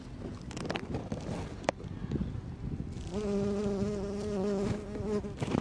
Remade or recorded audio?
recorded